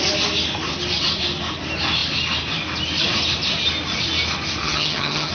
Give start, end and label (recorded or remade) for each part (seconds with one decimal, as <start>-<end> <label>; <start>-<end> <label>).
0.0-4.6 recorded; 4.6-5.3 remade